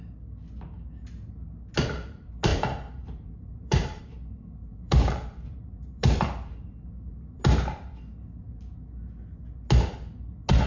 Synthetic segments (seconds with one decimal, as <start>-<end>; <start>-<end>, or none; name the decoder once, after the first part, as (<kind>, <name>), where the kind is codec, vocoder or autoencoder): 2.5-4.0 (vocoder, BigVGAN v2); 4.6-7.4